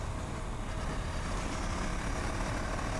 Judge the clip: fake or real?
real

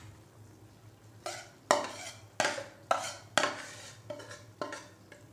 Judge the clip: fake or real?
real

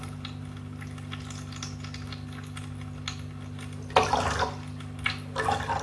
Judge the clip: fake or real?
real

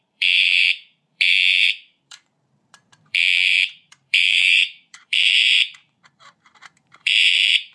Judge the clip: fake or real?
fake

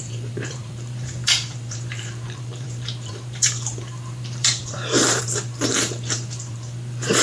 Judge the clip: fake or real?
fake